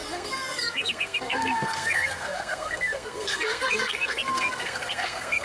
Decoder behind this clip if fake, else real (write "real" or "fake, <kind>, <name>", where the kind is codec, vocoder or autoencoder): fake, codec, SNAC